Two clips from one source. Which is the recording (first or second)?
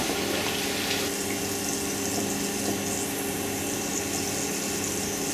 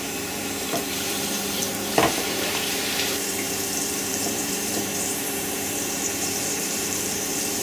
first